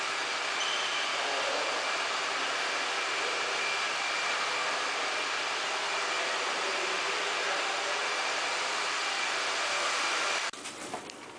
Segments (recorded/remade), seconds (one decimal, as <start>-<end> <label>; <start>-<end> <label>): 0.0-0.9 remade; 0.9-3.4 recorded; 3.4-11.4 remade